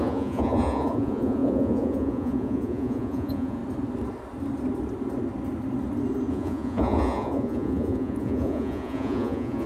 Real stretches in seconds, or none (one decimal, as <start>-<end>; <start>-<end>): 3.6-6.3